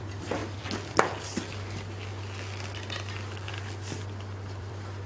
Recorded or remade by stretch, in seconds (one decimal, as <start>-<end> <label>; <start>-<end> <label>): 0.0-0.4 remade; 0.4-3.5 recorded; 3.5-5.1 remade